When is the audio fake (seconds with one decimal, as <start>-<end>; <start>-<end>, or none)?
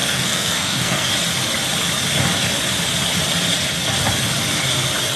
0.0-1.1